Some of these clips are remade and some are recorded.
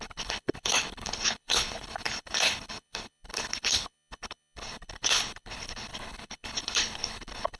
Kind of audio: remade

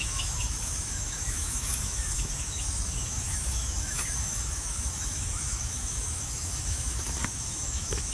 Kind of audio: remade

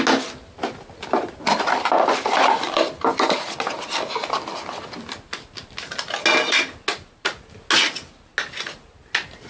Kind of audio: recorded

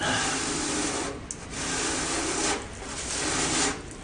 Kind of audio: recorded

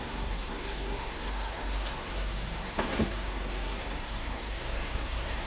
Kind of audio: remade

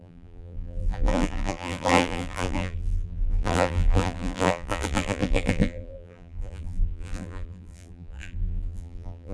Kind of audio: remade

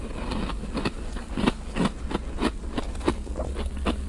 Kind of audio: recorded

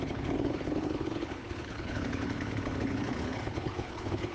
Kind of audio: remade